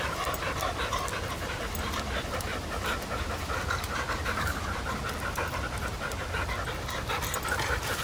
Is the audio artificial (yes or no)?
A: yes